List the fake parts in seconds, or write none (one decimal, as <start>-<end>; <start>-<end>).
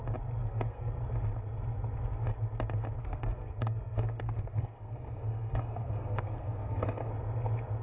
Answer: 0.4-1.0; 3.0-7.1